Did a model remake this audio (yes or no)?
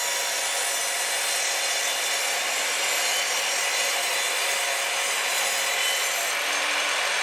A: no